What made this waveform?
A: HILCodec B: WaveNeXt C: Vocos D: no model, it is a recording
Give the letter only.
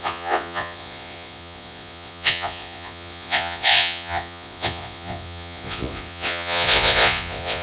C